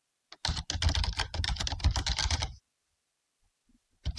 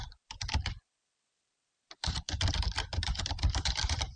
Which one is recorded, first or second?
first